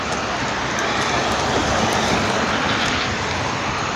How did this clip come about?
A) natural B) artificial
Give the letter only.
A